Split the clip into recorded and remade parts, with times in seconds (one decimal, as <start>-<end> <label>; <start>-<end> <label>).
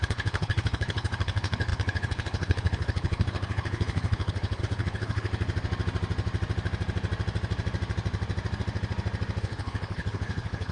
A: 0.0-5.3 remade; 5.3-9.4 recorded; 9.4-10.7 remade